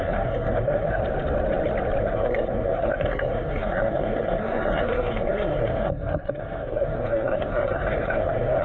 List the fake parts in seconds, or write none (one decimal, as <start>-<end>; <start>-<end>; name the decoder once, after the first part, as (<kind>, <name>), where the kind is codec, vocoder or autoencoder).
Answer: 0.0-1.0 (codec, SNAC); 2.0-8.6